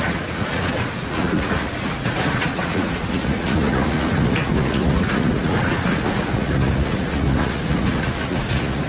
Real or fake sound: fake